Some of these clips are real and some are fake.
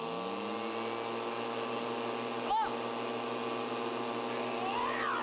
real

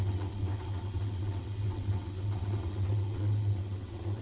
fake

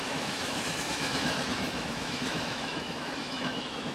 fake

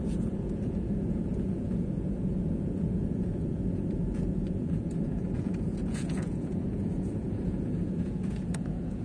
fake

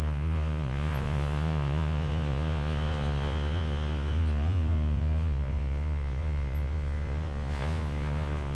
fake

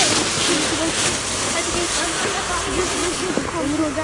real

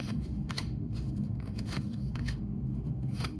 fake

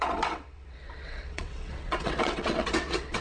fake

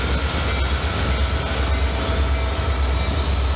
real